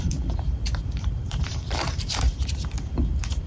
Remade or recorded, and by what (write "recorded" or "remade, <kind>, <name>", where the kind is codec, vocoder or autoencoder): remade, vocoder, BigVGAN v2